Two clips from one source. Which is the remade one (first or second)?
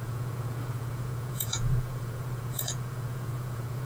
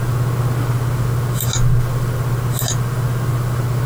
first